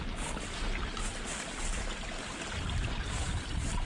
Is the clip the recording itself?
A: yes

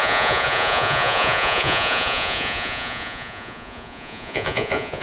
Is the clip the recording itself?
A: no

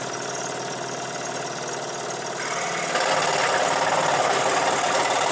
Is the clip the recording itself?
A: yes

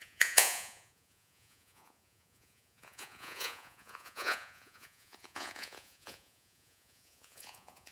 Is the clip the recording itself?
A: no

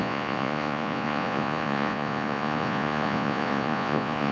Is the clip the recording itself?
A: no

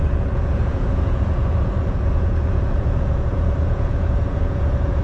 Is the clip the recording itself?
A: no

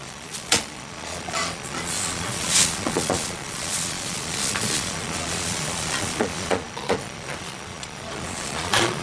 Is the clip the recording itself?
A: no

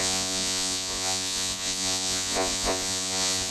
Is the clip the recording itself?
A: no